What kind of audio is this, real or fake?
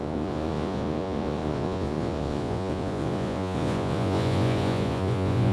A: fake